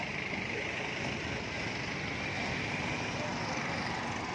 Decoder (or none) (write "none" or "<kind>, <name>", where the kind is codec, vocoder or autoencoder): none